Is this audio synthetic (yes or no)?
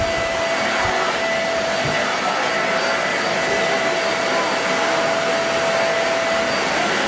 no